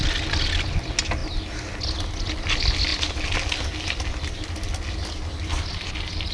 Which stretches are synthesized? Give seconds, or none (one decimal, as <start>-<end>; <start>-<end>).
none